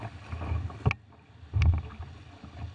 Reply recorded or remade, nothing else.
recorded